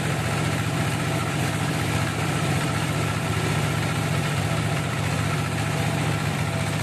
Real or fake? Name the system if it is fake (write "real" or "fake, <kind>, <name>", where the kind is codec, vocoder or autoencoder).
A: real